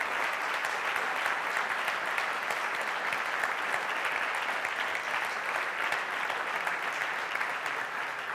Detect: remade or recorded recorded